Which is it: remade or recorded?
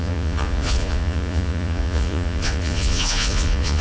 remade